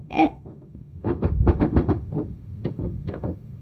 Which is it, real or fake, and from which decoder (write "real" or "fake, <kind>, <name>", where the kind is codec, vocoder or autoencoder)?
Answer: fake, autoencoder, DAC-VAE